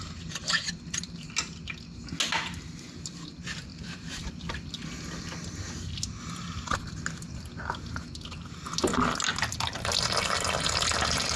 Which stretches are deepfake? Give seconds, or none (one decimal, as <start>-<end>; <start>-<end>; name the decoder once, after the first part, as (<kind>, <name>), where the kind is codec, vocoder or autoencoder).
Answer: 3.7-4.3 (vocoder, BigVGAN v2)